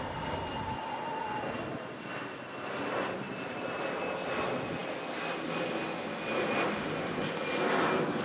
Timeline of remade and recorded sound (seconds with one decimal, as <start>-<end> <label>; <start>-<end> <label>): 0.0-8.2 recorded